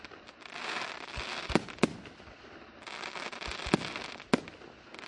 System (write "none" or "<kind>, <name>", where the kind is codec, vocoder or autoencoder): none